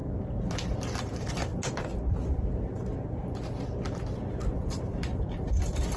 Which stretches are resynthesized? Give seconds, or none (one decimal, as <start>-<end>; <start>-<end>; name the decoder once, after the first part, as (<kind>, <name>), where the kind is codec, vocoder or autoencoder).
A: 1.0-1.5 (vocoder, BigVGAN v2); 2.3-3.2; 4.7-6.0